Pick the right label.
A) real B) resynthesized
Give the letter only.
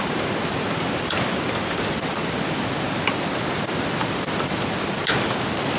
A